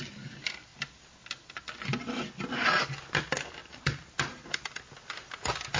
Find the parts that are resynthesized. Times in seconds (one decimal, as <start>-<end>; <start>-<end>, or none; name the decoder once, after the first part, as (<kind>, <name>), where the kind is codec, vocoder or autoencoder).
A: 3.6-4.8 (vocoder, BigVGAN v2)